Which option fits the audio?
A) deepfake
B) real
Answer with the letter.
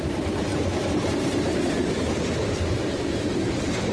A